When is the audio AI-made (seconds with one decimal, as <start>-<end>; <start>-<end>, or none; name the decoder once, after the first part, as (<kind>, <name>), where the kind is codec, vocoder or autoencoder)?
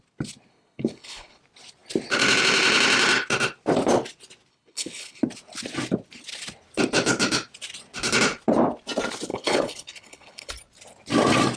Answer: 0.5-1.4 (codec, HILCodec); 4.5-5.2; 9.3-10.5